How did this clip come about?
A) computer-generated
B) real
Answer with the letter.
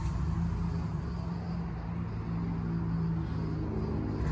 B